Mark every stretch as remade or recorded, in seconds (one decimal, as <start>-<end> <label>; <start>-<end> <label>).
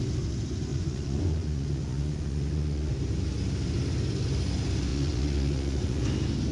0.0-0.7 recorded; 0.7-2.9 remade; 2.9-4.9 recorded; 4.9-6.0 remade; 6.0-6.5 recorded